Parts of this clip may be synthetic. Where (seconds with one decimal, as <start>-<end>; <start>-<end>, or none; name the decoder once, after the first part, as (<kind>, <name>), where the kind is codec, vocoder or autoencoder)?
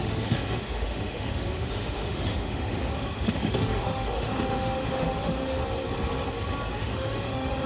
0.0-5.6 (autoencoder, DAC-VAE); 6.7-7.7